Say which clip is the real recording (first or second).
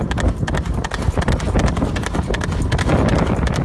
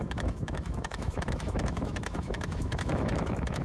first